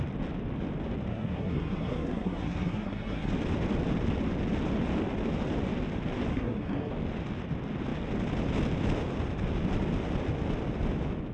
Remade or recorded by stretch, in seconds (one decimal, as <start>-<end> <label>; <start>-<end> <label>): 0.0-1.1 recorded; 1.1-3.3 remade; 3.3-6.3 recorded; 6.3-6.9 remade; 6.9-11.3 recorded